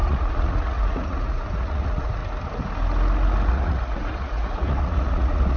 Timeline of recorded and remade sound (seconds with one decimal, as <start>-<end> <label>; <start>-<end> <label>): 0.0-2.2 remade; 2.2-3.5 recorded; 3.5-5.6 remade